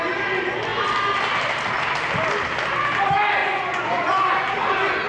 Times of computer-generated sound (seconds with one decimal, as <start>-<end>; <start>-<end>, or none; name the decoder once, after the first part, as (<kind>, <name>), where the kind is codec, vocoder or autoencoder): 3.4-4.3 (vocoder, Vocos)